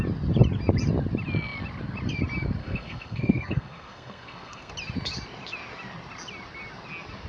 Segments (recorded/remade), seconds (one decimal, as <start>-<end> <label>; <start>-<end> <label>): 0.0-2.6 recorded; 2.6-4.7 remade; 4.7-7.3 recorded